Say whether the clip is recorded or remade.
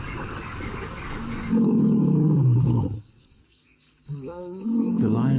remade